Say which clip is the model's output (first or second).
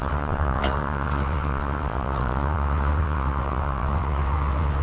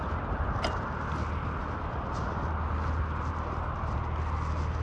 first